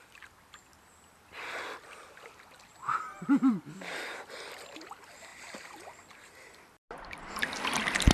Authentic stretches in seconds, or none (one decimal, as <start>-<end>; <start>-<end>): 0.0-0.7; 1.6-5.3; 6.1-8.1